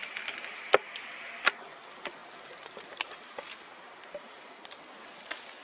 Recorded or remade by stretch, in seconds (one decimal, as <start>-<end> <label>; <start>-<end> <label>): 0.0-2.2 recorded; 2.2-4.5 remade; 4.5-5.6 recorded